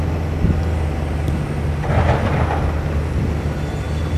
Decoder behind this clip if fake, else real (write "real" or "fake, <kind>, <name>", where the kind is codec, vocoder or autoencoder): real